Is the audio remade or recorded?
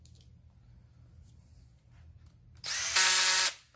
recorded